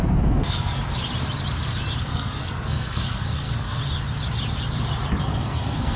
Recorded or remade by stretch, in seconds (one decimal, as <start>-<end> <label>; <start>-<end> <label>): 0.0-0.8 remade; 0.8-2.0 recorded; 2.0-3.8 remade; 3.8-5.2 recorded; 5.2-6.0 remade